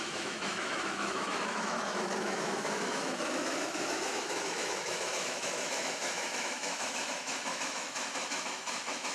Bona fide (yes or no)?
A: no